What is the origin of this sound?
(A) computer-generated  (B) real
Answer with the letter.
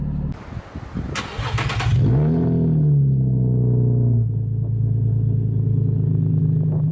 B